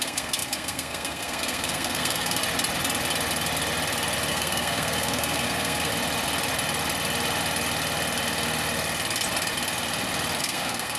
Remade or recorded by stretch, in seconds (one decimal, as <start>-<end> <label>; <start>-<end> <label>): 0.0-2.4 remade; 2.4-4.3 recorded; 4.3-5.9 remade; 5.9-10.4 recorded; 10.4-11.0 remade